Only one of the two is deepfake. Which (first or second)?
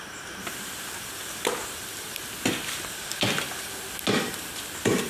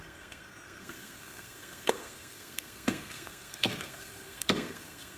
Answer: second